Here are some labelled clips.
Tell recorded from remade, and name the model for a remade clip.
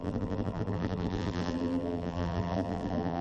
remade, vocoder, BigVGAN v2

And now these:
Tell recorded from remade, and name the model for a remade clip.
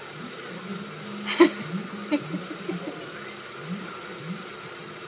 recorded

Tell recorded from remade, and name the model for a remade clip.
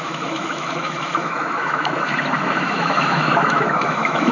remade, autoencoder, DAC-VAE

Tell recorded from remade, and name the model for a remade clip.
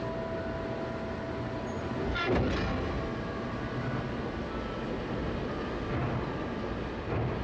recorded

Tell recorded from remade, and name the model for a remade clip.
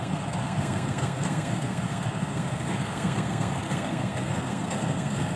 remade, codec, SNAC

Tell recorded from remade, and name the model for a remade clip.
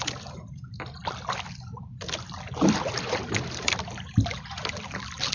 recorded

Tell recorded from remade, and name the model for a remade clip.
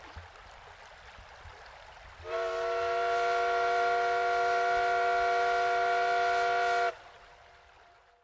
recorded